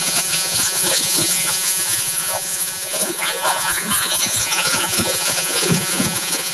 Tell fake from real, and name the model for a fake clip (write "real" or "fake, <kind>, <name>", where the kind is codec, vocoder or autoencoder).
fake, vocoder, Vocos